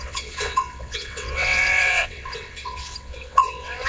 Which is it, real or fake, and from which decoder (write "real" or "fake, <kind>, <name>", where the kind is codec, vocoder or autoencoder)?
fake, vocoder, WaveNeXt